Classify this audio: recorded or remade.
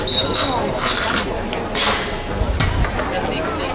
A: recorded